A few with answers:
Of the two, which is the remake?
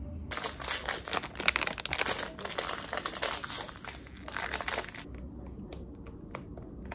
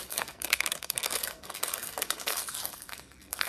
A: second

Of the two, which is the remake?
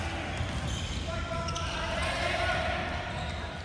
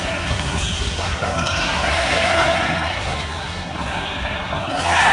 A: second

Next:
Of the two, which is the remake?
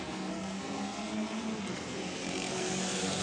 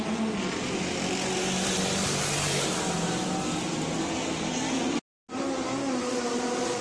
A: first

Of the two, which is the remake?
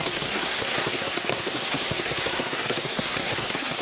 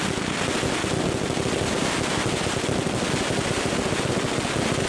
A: first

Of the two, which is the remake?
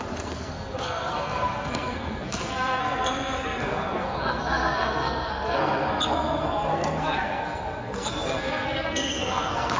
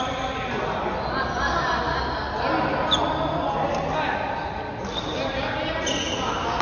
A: first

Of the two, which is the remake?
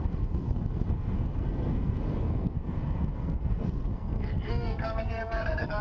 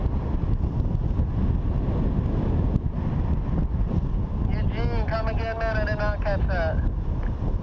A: first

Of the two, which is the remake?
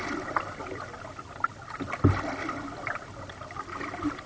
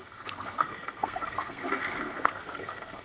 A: second